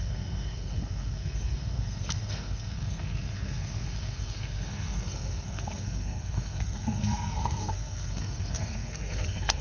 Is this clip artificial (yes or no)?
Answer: yes